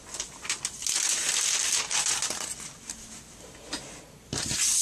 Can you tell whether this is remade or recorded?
recorded